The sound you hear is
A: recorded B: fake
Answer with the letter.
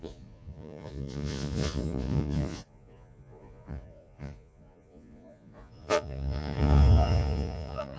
B